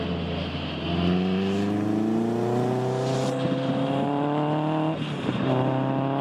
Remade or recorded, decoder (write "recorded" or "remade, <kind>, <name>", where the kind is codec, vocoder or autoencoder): recorded